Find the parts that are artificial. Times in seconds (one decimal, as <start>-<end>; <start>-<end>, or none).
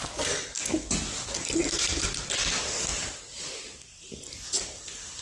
0.0-5.2